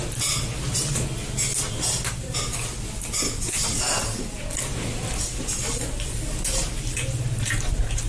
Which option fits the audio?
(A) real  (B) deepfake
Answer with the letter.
A